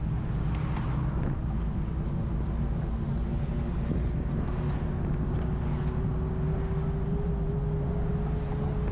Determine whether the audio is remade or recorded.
recorded